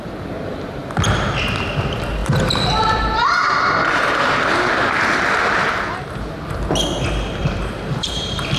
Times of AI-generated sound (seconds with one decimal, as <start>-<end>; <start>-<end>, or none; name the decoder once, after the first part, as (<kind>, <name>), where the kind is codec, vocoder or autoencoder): 2.2-4.7 (vocoder, BigVGAN v2); 7.4-8.6